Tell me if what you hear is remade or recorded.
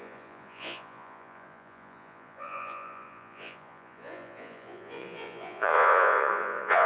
remade